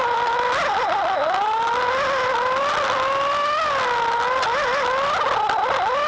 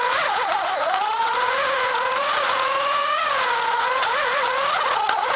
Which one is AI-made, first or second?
second